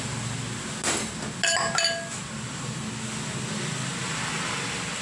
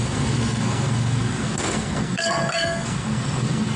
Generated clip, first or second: second